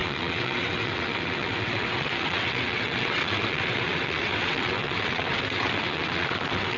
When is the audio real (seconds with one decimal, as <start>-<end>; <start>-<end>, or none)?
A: none